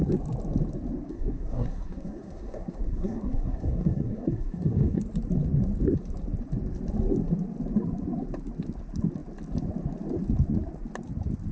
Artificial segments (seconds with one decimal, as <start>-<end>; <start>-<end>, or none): 1.1-5.0